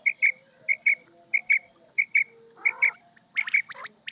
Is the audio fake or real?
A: real